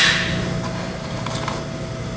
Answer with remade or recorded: recorded